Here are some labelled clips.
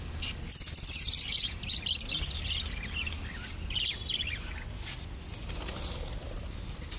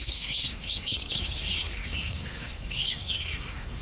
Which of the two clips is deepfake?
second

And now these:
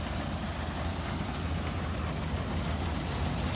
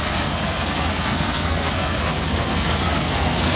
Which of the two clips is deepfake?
second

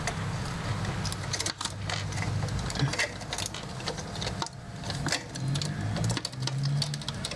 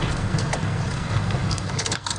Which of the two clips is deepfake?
second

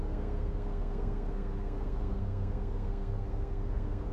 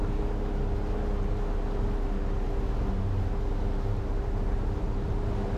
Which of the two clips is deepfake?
first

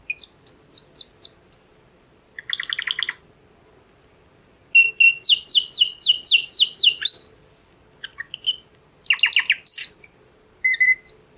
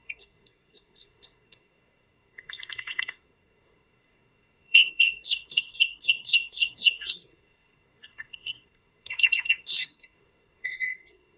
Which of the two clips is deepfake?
second